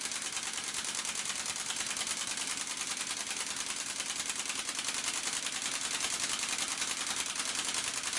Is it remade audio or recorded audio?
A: recorded